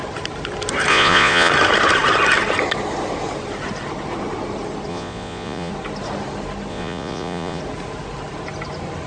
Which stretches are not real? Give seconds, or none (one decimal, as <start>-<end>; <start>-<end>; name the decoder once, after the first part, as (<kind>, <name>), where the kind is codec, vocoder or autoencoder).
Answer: 0.9-1.5 (vocoder, Vocos); 4.9-5.7; 6.7-7.6